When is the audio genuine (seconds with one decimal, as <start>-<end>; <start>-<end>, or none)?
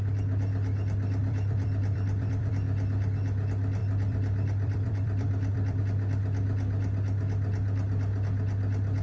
0.0-1.2; 2.5-3.8; 5.8-9.0